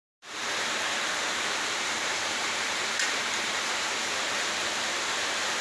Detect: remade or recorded remade